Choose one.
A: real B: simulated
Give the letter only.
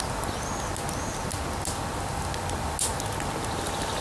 A